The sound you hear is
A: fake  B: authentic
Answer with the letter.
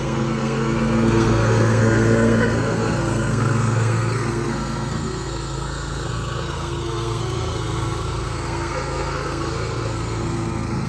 A